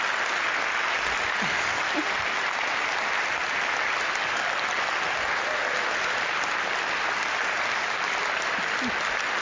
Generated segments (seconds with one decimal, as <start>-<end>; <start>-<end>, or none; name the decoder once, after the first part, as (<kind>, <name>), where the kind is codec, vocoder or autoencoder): 5.6-6.4 (vocoder, BigVGAN v2)